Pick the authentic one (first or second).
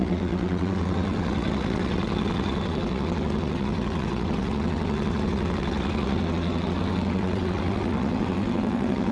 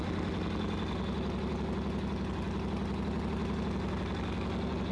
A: second